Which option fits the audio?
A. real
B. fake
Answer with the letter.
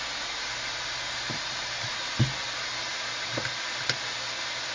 A